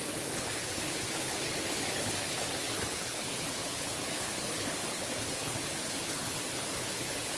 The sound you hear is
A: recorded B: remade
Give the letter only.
B